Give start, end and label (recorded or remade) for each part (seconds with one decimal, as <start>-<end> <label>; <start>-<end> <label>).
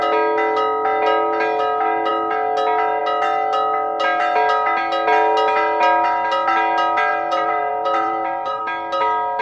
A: 0.0-7.1 recorded; 7.1-8.6 remade; 8.6-9.4 recorded